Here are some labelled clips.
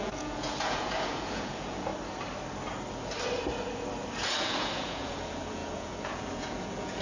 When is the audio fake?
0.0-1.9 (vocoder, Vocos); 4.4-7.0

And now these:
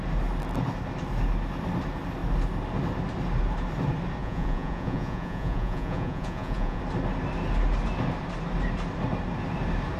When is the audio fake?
4.2-6.8 (vocoder, Vocos)

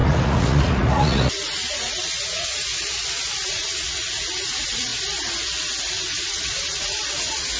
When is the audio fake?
0.0-2.7 (vocoder, Vocos); 3.5-4.9; 5.8-7.6